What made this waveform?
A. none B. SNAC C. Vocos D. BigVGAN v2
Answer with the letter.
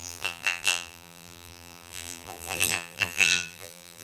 D